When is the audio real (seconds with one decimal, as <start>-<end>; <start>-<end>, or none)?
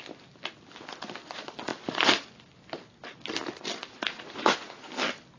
0.0-3.9; 4.9-5.4